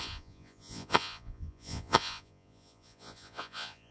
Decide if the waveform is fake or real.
fake